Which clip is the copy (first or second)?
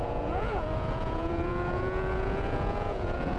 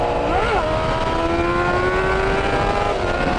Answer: first